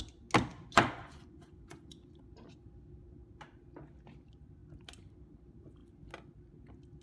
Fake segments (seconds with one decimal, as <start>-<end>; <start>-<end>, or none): 0.5-2.2